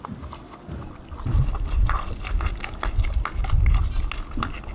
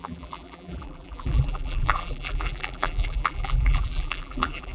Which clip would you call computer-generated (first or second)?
second